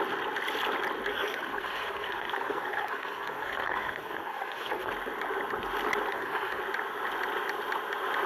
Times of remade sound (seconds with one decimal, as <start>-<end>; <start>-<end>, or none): 1.1-4.9; 6.1-6.6

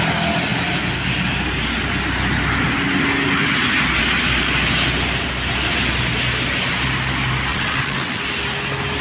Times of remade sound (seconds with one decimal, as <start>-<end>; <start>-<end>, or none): 7.5-8.2

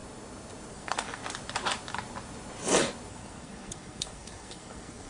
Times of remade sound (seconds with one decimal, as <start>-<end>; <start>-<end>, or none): 0.7-1.2; 3.1-5.1

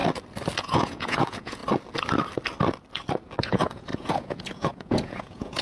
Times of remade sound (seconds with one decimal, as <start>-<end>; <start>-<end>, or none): 0.6-1.6; 3.4-5.6

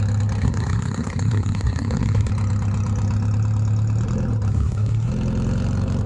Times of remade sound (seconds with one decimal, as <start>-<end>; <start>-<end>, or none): 0.4-2.3; 4.5-5.1

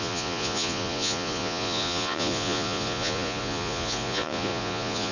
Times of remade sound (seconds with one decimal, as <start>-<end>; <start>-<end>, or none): 0.0-5.1

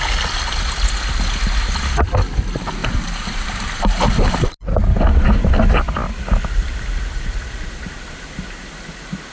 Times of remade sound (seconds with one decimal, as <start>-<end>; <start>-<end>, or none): 2.8-4.0

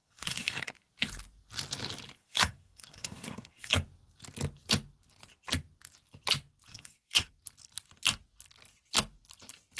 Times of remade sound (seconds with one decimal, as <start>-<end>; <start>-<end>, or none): 0.0-0.7; 2.2-3.7; 6.7-7.3